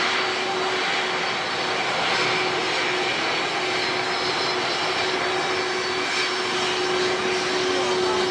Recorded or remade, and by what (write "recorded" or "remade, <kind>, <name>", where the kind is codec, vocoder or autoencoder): recorded